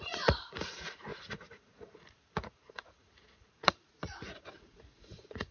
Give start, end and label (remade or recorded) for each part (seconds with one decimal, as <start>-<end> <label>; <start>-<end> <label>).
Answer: 0.0-5.5 remade